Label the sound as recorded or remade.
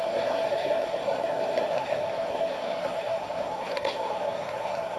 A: remade